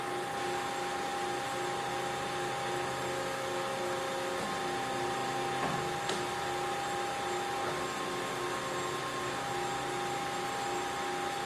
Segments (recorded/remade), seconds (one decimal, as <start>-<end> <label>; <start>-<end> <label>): 0.0-11.5 recorded